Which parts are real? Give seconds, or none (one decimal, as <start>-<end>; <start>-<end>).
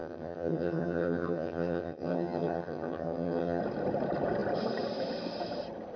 3.6-6.0